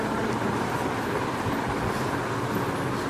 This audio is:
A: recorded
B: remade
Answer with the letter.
A